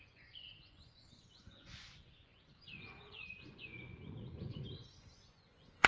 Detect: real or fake fake